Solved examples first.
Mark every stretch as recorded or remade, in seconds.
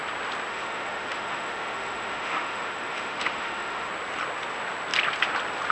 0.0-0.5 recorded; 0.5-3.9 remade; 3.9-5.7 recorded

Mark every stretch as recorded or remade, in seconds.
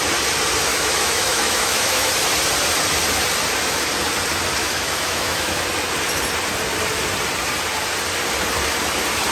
0.0-0.7 recorded; 0.7-2.1 remade; 2.1-4.6 recorded; 4.6-5.6 remade; 5.6-9.3 recorded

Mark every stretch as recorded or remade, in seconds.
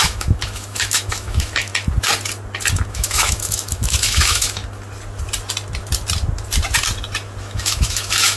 0.0-1.7 remade; 1.7-2.9 recorded; 2.9-4.6 remade; 4.6-7.4 recorded; 7.4-8.4 remade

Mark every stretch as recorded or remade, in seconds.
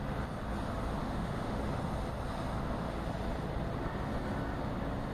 0.0-1.0 recorded; 1.0-1.6 remade; 1.6-5.1 recorded